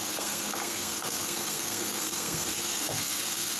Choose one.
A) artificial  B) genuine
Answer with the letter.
A